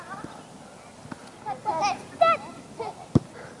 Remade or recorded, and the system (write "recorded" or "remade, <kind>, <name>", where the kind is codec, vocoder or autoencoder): recorded